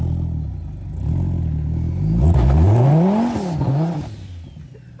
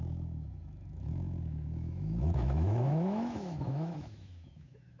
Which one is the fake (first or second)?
second